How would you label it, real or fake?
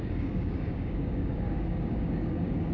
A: fake